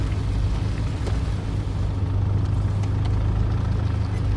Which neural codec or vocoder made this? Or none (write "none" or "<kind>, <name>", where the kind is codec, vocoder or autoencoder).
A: none